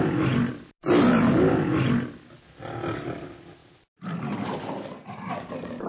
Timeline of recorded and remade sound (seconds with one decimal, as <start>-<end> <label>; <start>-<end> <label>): 0.0-3.6 recorded; 3.6-5.3 remade; 5.3-5.9 recorded